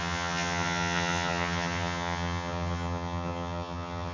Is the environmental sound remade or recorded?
remade